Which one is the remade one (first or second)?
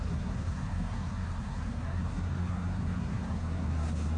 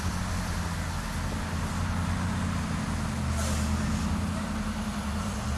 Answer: first